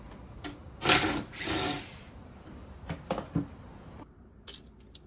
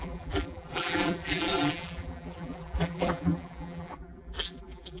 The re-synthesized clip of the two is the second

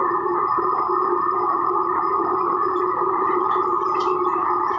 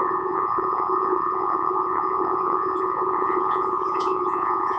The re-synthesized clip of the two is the second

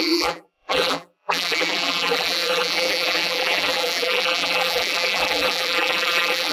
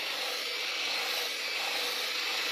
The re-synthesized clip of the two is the first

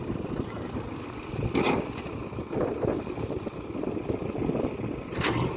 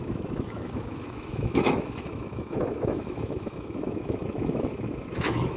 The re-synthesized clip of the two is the second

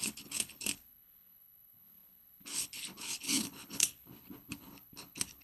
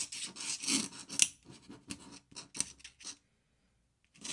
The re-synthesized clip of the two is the first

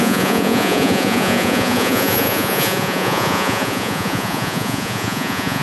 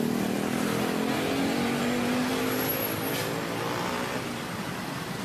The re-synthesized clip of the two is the first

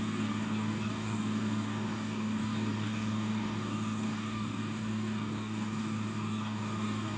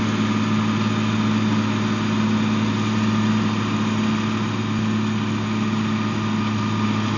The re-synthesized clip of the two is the first